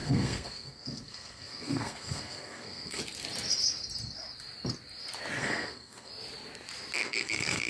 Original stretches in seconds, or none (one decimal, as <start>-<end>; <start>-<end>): 3.0-5.4; 6.1-7.0